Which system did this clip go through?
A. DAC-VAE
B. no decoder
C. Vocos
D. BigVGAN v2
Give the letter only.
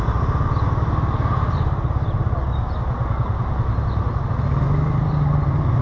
B